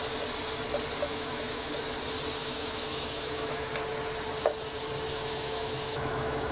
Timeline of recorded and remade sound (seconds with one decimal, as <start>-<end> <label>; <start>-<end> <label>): 0.0-1.1 recorded; 1.1-1.7 remade; 1.7-2.4 recorded; 2.4-3.7 remade; 3.7-5.1 recorded; 5.1-6.5 remade